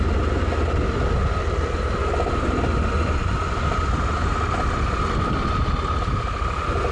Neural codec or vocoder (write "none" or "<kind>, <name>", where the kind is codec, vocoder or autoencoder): none